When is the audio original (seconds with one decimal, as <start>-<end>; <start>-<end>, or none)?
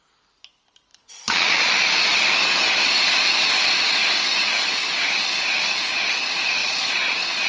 0.0-0.9; 1.7-6.6